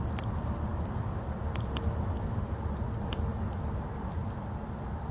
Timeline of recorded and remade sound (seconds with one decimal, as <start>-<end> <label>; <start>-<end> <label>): 0.0-5.1 recorded